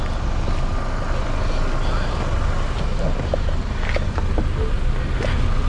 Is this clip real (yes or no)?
yes